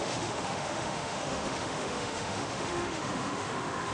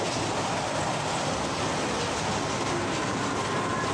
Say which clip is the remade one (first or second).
first